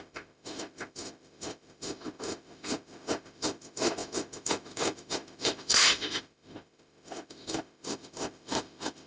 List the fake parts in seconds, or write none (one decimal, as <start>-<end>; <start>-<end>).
0.0-9.1